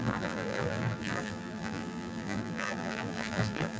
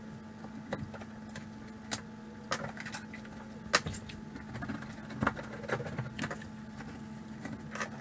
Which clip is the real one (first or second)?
second